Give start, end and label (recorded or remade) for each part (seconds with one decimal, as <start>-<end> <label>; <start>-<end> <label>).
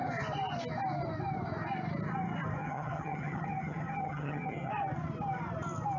0.0-2.6 recorded; 2.6-4.7 remade; 4.7-6.0 recorded